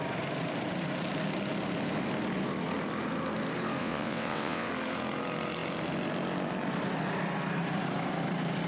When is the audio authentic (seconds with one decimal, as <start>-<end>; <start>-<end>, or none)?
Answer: 0.0-3.8; 4.7-8.7